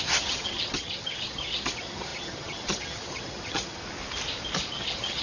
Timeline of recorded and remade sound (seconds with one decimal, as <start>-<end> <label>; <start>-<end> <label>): 0.0-3.8 remade; 3.8-4.7 recorded; 4.7-5.2 remade